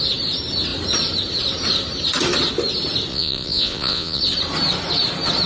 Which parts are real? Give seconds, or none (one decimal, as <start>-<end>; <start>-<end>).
0.0-3.1; 4.2-5.5